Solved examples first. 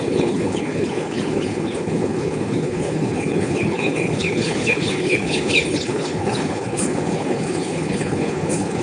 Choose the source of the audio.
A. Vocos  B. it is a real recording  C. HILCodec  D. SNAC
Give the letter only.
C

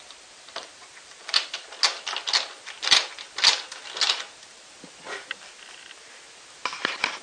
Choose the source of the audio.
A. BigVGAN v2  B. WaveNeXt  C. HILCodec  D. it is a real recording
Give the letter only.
D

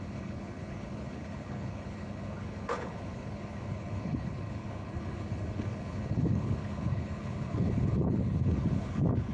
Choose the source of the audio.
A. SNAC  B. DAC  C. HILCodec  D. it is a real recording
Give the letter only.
C